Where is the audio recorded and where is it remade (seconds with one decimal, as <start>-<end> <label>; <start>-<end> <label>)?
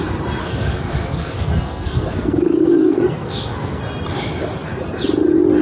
0.0-0.4 recorded; 0.4-3.8 remade; 3.8-5.6 recorded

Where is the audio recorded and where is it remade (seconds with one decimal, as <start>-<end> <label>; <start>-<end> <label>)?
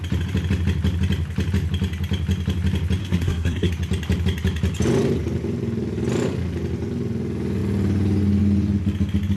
0.0-3.0 recorded; 3.0-3.7 remade; 3.7-9.4 recorded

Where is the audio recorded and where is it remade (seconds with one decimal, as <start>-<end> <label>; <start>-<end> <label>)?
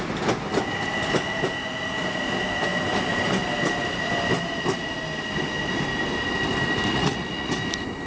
0.0-6.9 recorded; 6.9-7.5 remade; 7.5-8.1 recorded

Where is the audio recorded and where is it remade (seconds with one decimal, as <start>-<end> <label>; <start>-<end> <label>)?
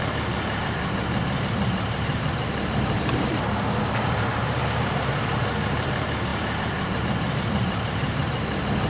0.0-8.9 remade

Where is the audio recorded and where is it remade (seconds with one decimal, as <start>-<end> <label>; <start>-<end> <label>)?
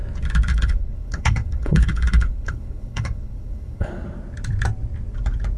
0.0-0.5 recorded; 0.5-3.9 remade; 3.9-5.6 recorded